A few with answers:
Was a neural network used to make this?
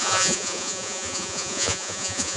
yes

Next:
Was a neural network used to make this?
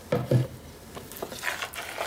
no